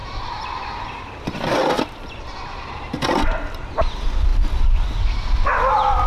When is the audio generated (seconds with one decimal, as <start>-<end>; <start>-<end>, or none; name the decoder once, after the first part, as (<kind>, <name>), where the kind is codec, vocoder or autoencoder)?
0.0-3.7 (vocoder, BigVGAN v2)